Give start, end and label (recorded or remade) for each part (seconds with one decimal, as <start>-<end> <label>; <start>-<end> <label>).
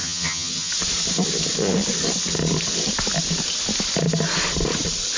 0.0-0.7 remade; 0.7-5.2 recorded